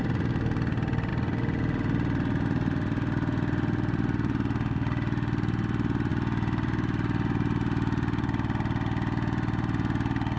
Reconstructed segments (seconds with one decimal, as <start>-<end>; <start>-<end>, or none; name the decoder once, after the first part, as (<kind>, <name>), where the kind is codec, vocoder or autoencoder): none